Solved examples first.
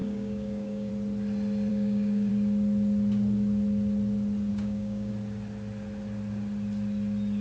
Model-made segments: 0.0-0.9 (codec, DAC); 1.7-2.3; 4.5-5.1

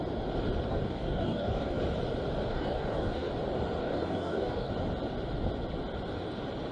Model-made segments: 0.7-1.8 (codec, DAC); 2.5-3.3; 3.8-4.7